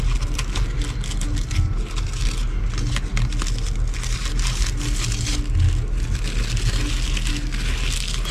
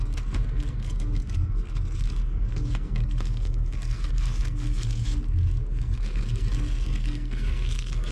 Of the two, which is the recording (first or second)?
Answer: first